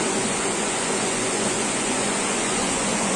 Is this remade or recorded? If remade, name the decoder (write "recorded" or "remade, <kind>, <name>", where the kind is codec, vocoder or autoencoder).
remade, vocoder, Vocos